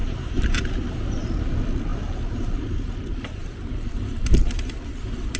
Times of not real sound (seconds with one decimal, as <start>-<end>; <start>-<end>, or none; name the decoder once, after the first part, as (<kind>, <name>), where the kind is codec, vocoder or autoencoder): 0.0-1.5 (vocoder, BigVGAN v2); 1.9-5.4